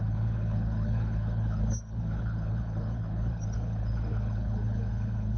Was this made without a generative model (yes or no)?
no